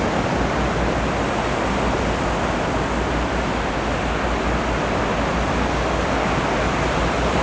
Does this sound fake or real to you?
real